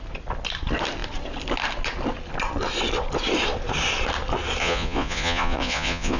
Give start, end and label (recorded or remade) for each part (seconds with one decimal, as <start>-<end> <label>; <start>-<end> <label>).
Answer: 0.0-4.6 recorded; 4.6-6.2 remade